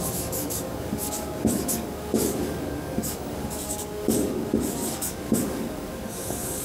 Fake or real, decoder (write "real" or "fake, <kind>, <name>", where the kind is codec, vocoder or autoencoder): fake, codec, DAC